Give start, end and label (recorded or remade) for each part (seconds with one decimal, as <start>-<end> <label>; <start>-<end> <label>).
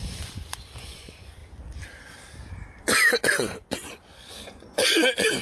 0.0-1.4 remade; 1.4-2.8 recorded; 2.8-5.4 remade